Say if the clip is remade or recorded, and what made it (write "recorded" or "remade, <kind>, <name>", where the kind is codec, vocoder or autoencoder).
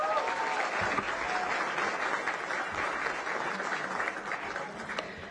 recorded